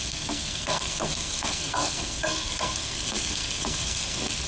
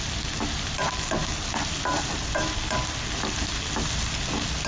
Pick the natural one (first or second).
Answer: second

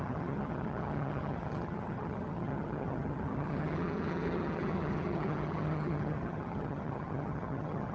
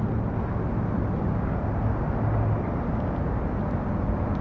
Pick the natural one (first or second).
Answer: second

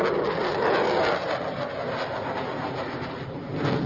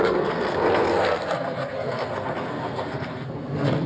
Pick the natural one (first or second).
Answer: first